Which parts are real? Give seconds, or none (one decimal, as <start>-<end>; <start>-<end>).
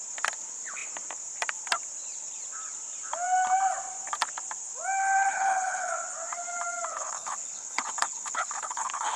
0.0-5.3; 5.9-6.9